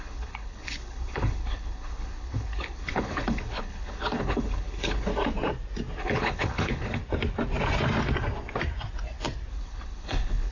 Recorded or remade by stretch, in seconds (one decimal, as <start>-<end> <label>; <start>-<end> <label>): 0.0-5.1 remade; 5.1-6.0 recorded; 6.0-7.0 remade; 7.0-9.5 recorded; 9.5-10.5 remade